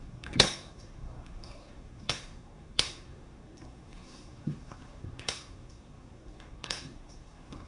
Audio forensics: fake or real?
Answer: fake